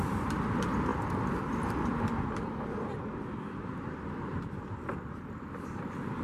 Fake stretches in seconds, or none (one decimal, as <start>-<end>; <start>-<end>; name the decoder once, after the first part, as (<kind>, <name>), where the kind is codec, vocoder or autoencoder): 0.0-0.9 (vocoder, BigVGAN v2); 3.7-6.2